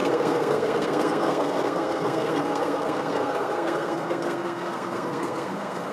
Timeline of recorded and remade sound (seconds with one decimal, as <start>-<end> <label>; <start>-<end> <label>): 0.0-5.9 remade